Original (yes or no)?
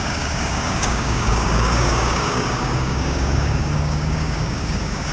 no